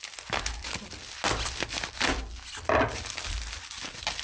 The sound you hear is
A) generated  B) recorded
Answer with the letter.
B